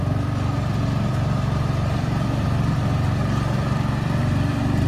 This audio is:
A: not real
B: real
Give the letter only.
A